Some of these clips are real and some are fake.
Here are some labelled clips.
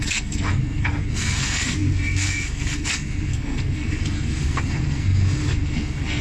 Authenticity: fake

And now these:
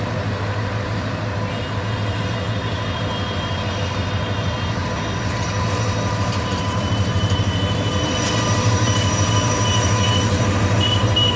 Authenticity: fake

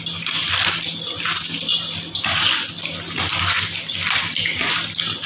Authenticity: real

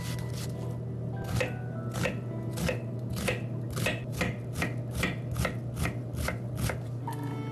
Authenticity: real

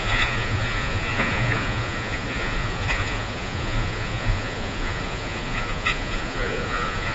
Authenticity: fake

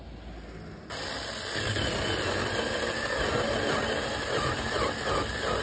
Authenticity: real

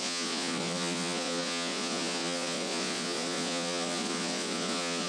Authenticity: fake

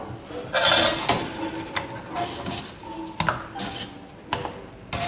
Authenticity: real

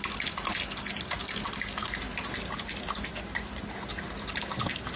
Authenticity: real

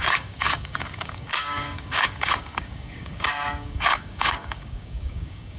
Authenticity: fake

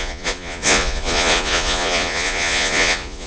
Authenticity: fake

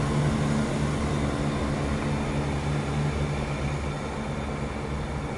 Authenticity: real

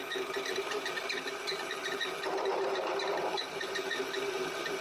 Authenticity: fake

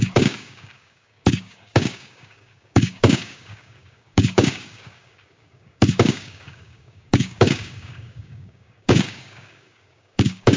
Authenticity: fake